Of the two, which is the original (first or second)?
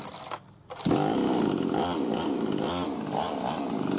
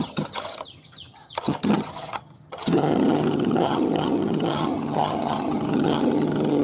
first